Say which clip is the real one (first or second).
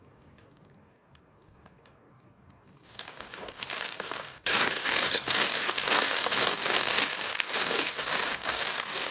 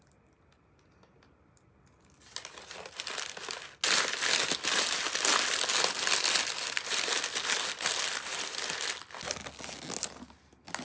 second